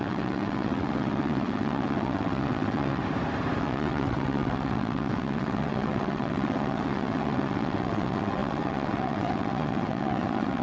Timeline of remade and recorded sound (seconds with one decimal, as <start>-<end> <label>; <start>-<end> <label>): 0.0-3.0 remade; 3.0-3.6 recorded; 3.6-10.6 remade